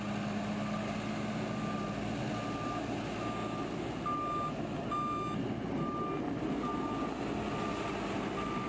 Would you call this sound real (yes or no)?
yes